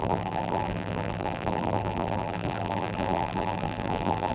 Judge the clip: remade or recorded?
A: remade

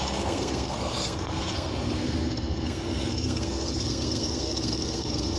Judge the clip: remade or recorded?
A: remade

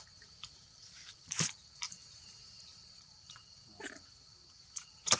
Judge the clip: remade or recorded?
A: remade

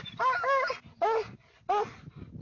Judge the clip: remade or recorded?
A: recorded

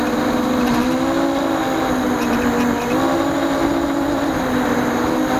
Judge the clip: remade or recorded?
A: recorded